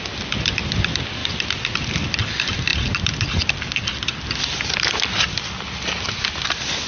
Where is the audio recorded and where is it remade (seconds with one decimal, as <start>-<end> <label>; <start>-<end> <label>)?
0.0-6.9 recorded